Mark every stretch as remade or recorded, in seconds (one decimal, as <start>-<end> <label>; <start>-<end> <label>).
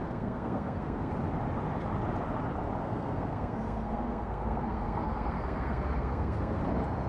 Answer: 0.0-1.1 remade; 1.1-2.8 recorded; 2.8-6.6 remade; 6.6-7.1 recorded